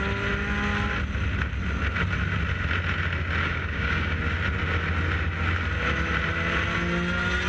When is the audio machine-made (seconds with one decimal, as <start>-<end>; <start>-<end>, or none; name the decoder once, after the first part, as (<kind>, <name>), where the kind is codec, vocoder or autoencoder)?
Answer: 3.4-4.2 (codec, DAC)